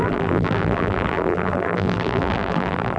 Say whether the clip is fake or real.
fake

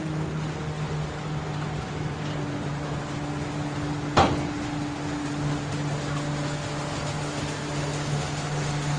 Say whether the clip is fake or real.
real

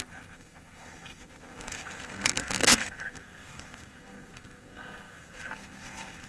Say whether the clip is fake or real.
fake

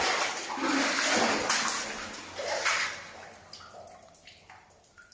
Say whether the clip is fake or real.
real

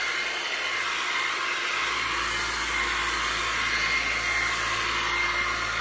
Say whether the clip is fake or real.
real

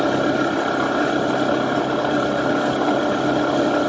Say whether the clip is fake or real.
real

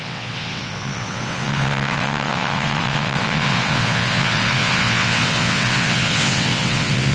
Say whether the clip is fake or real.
fake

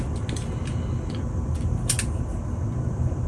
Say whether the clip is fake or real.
real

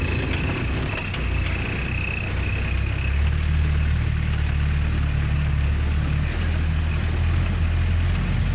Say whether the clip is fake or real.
real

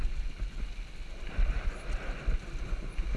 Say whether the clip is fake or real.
real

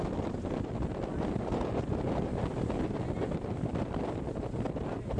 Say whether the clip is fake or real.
real